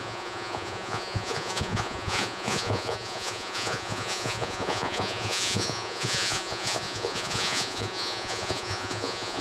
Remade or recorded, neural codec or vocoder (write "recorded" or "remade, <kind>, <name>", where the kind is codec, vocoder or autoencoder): remade, vocoder, Vocos